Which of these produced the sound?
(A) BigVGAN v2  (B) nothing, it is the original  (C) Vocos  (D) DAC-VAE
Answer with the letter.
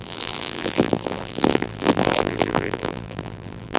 A